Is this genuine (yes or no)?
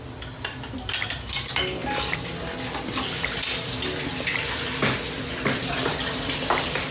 yes